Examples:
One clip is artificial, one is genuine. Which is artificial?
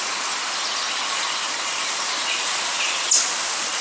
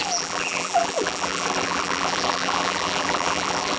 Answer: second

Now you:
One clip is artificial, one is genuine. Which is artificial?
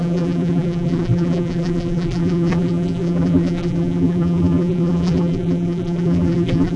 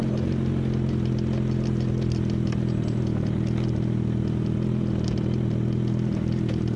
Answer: first